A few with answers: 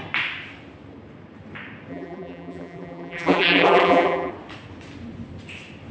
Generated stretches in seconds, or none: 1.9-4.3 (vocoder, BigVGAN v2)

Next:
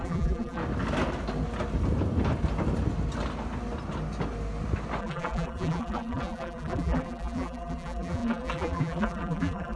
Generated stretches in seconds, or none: 0.0-0.6 (vocoder, BigVGAN v2); 5.0-9.8

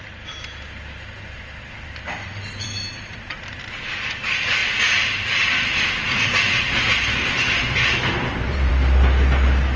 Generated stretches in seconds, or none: 1.6-3.6 (vocoder, BigVGAN v2); 4.6-8.7

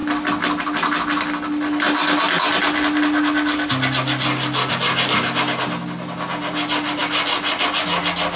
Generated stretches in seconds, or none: none

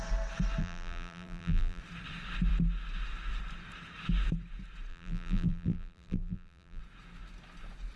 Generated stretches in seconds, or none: 0.6-1.8 (vocoder, BigVGAN v2); 4.9-6.8